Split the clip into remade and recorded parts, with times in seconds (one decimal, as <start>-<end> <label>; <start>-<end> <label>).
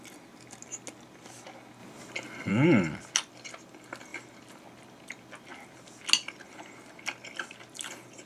0.0-8.3 recorded